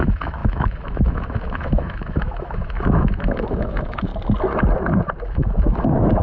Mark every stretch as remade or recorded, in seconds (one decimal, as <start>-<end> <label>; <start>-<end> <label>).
0.0-4.1 remade; 4.1-5.3 recorded; 5.3-6.2 remade